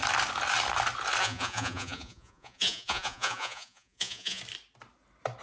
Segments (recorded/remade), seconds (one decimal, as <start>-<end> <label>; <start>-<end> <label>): 0.0-1.2 recorded; 1.2-4.4 remade; 4.4-5.4 recorded